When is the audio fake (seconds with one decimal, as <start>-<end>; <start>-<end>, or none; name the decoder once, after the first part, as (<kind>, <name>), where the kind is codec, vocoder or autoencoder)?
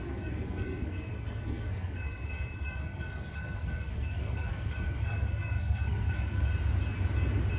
0.0-6.5 (codec, SNAC)